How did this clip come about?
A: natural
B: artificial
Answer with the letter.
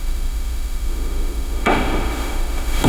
B